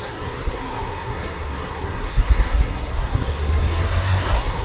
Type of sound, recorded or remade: remade